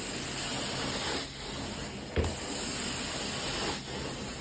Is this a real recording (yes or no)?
yes